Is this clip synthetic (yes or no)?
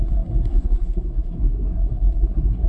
yes